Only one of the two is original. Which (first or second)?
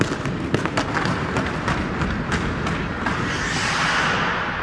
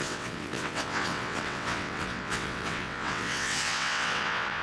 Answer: first